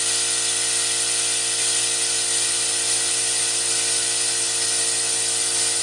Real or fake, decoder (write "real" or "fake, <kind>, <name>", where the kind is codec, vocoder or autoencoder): real